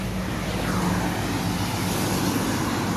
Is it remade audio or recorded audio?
recorded